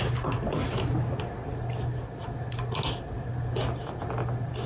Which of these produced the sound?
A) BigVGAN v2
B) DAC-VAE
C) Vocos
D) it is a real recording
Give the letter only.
D